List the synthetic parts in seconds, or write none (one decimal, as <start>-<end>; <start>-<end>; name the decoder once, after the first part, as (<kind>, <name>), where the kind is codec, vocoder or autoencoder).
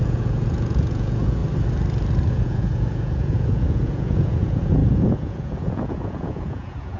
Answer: 0.0-1.4 (vocoder, Vocos); 2.3-7.0